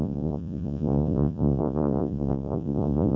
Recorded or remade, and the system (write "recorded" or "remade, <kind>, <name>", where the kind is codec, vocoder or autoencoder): remade, vocoder, Vocos